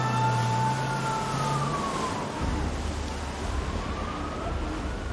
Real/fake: real